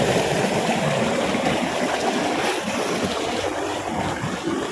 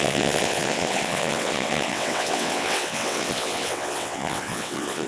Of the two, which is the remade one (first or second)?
second